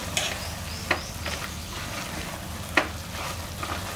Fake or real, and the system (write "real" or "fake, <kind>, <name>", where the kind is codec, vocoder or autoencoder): real